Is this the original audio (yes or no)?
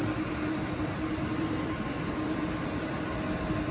no